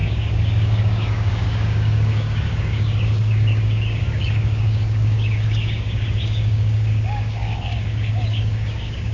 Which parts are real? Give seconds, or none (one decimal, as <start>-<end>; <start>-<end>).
none